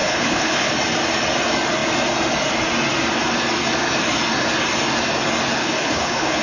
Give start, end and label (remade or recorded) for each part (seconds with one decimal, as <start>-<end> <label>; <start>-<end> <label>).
0.0-0.7 remade; 0.7-5.6 recorded; 5.6-6.4 remade